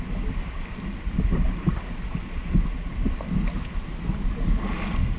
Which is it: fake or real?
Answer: real